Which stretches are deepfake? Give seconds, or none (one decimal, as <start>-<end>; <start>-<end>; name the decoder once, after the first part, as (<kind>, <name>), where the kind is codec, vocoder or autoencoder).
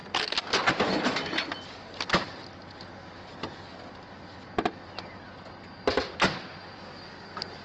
none